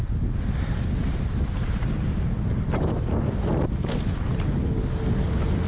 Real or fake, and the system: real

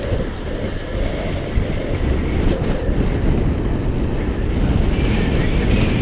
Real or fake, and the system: real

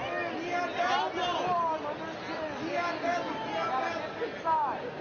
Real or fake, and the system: real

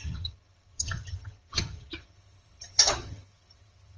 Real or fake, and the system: fake, vocoder, HiFi-GAN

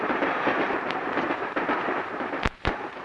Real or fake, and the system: fake, vocoder, BigVGAN v2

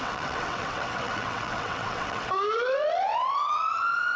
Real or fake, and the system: fake, vocoder, WaveNeXt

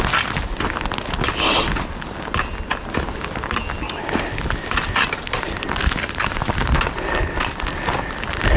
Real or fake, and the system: real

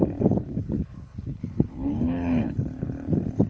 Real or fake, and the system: fake, codec, HILCodec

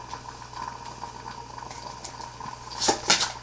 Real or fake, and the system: real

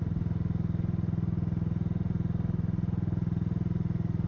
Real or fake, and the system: real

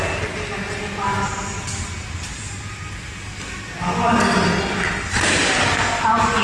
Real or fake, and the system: real